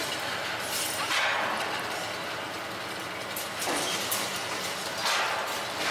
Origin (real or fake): real